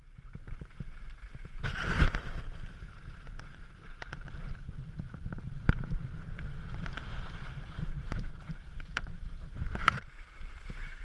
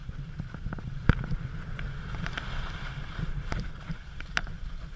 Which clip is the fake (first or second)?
first